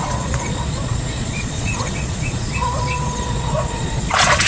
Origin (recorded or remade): remade